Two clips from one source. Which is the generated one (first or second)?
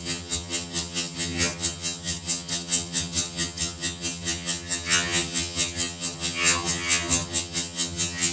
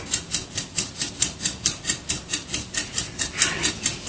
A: first